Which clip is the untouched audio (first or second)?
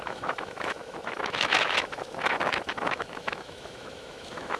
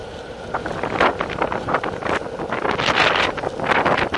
second